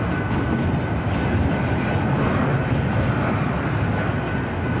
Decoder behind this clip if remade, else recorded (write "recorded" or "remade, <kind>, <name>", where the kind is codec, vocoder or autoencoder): recorded